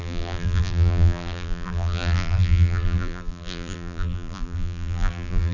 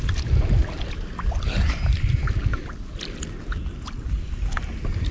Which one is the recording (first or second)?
second